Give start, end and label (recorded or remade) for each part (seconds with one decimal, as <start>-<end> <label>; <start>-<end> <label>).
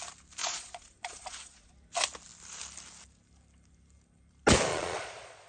0.0-0.4 recorded; 0.4-1.7 remade; 1.7-4.7 recorded; 4.7-5.5 remade